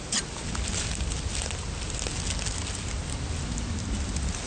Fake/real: real